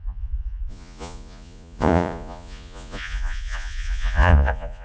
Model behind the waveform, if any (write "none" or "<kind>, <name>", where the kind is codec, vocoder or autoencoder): vocoder, Vocos